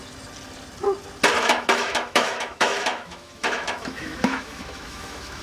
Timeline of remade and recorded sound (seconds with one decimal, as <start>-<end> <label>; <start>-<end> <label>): 0.0-1.4 recorded; 1.4-5.4 remade